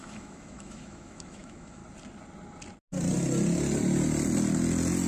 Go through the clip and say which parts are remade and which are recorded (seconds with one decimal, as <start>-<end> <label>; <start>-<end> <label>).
0.0-1.8 remade; 1.8-5.1 recorded